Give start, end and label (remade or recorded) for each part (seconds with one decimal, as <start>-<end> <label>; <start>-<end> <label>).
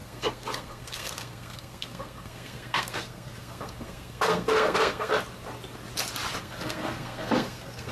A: 0.0-5.1 remade; 5.1-6.4 recorded; 6.4-7.9 remade